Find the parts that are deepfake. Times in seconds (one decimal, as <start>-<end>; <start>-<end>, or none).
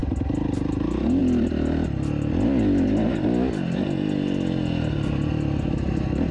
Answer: none